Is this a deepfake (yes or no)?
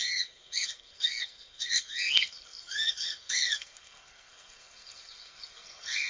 yes